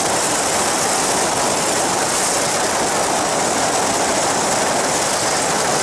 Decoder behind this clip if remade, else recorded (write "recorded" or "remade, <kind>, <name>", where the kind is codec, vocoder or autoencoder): recorded